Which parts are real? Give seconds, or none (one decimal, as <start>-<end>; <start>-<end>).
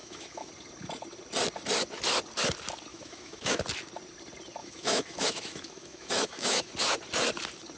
0.5-2.9; 3.6-4.6; 6.7-7.8